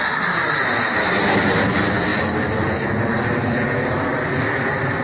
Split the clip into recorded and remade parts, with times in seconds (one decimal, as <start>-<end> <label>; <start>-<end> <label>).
0.0-5.0 recorded